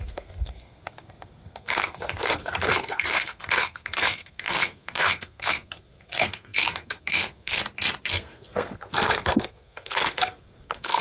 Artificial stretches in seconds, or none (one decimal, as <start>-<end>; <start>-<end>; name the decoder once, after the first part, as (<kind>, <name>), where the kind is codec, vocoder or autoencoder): 0.0-7.6 (codec, SNAC); 8.1-11.0